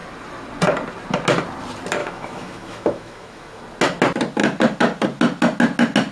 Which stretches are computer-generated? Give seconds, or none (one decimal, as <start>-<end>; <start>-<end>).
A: 2.0-3.6